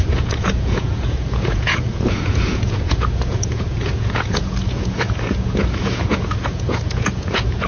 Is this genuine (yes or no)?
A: no